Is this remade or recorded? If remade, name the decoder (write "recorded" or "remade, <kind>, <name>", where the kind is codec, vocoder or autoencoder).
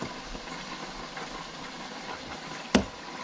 recorded